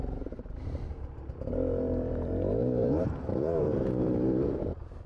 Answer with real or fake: fake